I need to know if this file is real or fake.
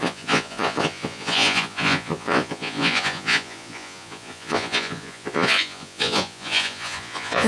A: fake